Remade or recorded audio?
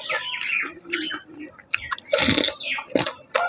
recorded